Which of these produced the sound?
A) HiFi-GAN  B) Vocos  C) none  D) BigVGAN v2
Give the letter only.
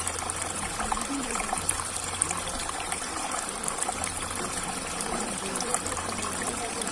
D